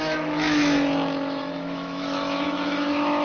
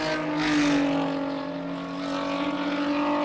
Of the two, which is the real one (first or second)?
second